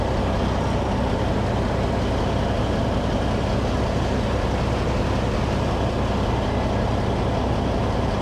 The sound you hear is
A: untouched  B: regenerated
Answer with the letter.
A